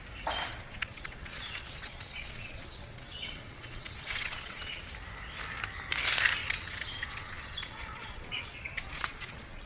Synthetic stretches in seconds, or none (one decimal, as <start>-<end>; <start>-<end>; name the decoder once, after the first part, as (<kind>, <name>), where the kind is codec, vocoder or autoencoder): 0.5-4.8 (vocoder, WaveNeXt); 6.4-9.7